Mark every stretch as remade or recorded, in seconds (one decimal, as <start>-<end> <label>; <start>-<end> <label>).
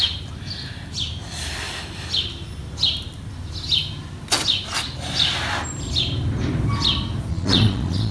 0.0-7.3 recorded; 7.3-8.1 remade